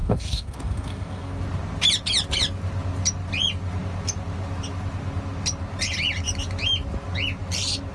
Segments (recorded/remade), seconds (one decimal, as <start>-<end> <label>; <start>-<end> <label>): 0.0-1.3 remade; 1.3-7.9 recorded